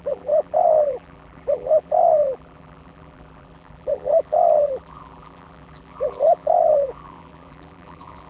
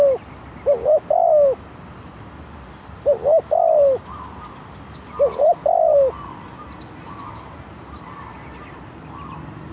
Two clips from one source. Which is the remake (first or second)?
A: first